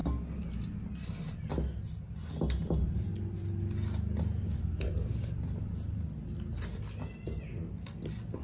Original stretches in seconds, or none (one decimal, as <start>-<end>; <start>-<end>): 0.0-8.4